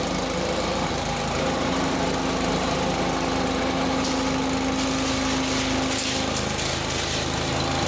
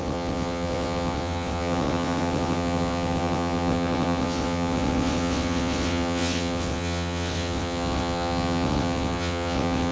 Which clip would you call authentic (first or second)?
first